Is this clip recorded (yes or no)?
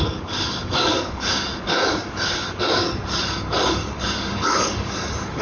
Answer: no